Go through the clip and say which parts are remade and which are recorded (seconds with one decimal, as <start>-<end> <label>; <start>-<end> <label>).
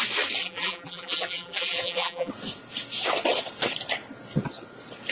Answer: 0.0-0.4 recorded; 0.4-2.3 remade; 2.3-5.1 recorded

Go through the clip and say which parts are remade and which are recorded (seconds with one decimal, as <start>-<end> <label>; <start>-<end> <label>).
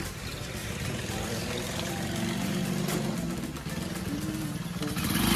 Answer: 0.0-0.6 recorded; 0.6-2.6 remade; 2.6-5.4 recorded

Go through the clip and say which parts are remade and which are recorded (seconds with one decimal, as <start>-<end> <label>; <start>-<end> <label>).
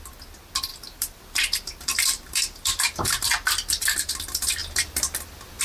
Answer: 0.0-0.7 recorded; 0.7-4.1 remade; 4.1-4.6 recorded; 4.6-5.6 remade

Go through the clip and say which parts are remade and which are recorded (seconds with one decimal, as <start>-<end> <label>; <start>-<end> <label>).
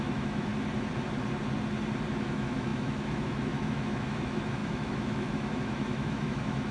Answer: 0.0-0.5 remade; 0.5-2.1 recorded; 2.1-6.7 remade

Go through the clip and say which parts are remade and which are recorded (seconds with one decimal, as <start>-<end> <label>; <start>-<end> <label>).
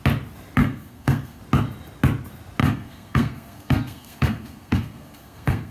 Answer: 0.0-0.6 recorded; 0.6-1.4 remade; 1.4-2.6 recorded; 2.6-5.7 remade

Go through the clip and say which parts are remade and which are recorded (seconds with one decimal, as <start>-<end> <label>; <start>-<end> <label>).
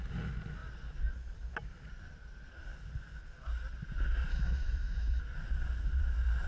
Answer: 0.0-4.3 recorded; 4.3-5.2 remade; 5.2-6.5 recorded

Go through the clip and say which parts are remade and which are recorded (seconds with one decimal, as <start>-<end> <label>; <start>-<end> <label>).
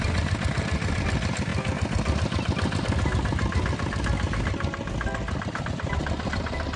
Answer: 0.0-6.8 recorded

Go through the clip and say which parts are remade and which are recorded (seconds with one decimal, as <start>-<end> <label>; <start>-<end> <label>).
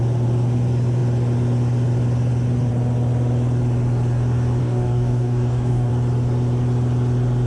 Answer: 0.0-4.6 recorded; 4.6-5.9 remade; 5.9-7.5 recorded